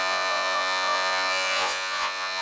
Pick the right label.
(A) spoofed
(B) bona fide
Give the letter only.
A